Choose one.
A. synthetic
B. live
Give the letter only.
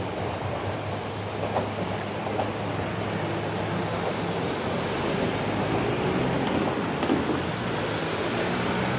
B